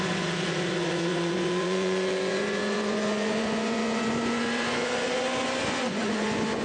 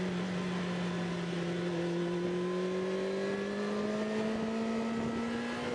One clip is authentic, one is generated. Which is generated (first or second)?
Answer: first